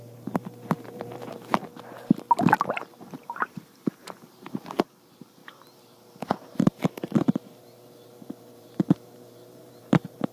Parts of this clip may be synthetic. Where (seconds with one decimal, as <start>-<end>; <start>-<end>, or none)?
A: 0.0-1.6; 2.8-10.3